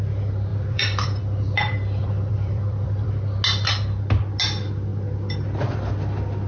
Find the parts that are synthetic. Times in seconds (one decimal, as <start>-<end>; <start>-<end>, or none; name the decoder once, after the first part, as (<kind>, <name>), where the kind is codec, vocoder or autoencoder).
0.5-3.1 (vocoder, BigVGAN v2)